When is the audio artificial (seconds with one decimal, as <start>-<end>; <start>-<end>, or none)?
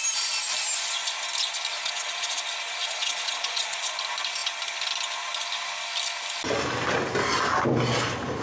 1.7-2.4; 2.8-3.9